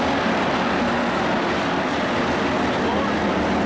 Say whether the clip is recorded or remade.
recorded